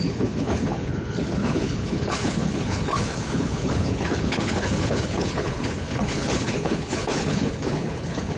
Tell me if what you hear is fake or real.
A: fake